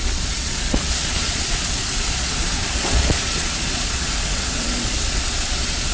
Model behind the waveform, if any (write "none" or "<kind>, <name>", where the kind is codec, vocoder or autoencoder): vocoder, Vocos